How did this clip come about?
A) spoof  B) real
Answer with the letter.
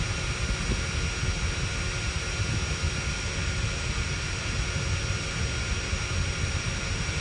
B